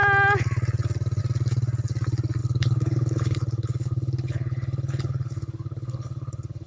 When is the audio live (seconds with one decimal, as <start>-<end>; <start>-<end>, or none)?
0.0-2.4